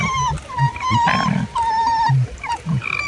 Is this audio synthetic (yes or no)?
no